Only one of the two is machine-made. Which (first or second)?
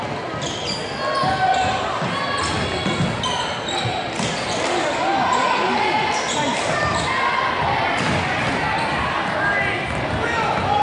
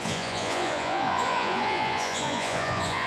second